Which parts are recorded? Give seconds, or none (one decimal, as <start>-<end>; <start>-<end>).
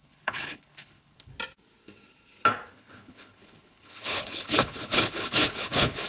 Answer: 1.3-2.7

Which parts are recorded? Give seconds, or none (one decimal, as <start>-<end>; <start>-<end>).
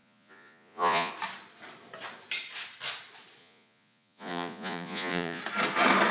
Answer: 1.1-3.4; 5.4-6.1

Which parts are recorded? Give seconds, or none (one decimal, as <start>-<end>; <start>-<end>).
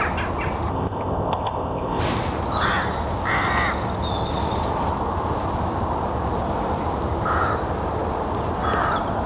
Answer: 0.0-0.7; 2.0-9.3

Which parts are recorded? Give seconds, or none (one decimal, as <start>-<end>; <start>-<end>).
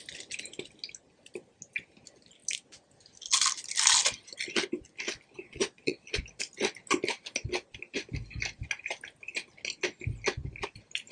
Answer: 0.0-5.4; 6.2-11.1